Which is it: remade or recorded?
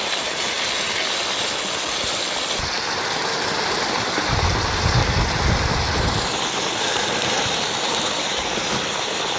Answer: recorded